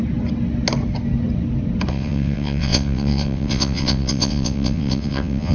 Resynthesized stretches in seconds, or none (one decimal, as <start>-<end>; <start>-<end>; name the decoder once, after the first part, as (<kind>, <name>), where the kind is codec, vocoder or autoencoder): 1.9-5.5 (vocoder, WaveNeXt)